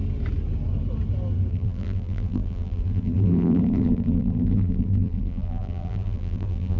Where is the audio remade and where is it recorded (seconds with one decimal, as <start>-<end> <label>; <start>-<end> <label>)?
0.0-1.5 recorded; 1.5-6.8 remade